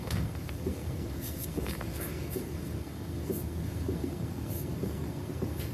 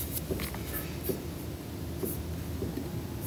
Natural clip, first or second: second